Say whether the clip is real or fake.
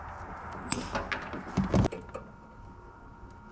real